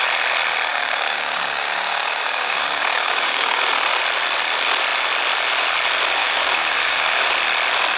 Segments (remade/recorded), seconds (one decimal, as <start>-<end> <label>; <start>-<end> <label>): 0.0-0.7 recorded; 0.7-3.6 remade; 3.6-6.2 recorded; 6.2-7.3 remade; 7.3-8.0 recorded